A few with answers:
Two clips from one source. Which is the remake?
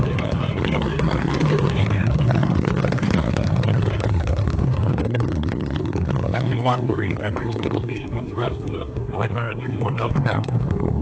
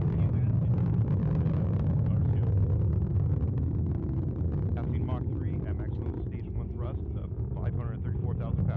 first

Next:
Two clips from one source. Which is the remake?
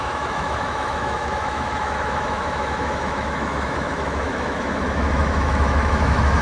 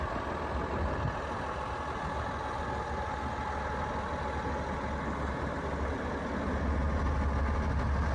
first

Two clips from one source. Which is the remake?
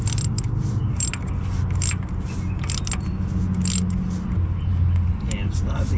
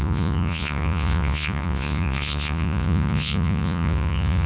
second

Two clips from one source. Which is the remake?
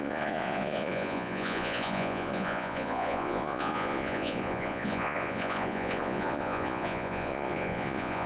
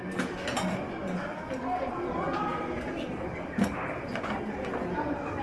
first